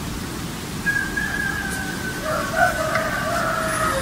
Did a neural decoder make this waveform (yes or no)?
no